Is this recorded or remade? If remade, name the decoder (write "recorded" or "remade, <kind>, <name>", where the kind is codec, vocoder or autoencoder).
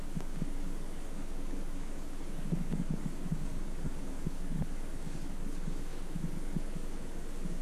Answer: remade, codec, DAC